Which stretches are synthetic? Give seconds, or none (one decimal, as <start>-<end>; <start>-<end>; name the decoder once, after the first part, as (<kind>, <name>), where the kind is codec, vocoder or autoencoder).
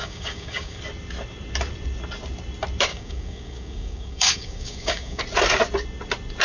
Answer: 0.0-0.8 (codec, DAC); 2.9-5.2